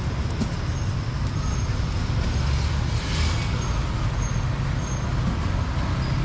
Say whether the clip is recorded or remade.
recorded